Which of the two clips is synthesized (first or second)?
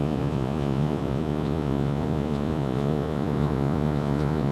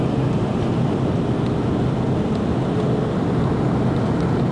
first